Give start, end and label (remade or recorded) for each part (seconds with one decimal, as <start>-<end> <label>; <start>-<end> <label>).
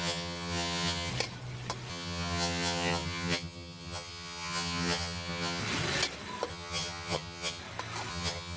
0.0-1.1 remade; 1.1-1.9 recorded; 1.9-5.6 remade; 5.6-6.5 recorded; 6.5-7.6 remade; 7.6-8.1 recorded; 8.1-8.6 remade